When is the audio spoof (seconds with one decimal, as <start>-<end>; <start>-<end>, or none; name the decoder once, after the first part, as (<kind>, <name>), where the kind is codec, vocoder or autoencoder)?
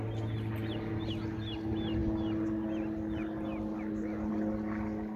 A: none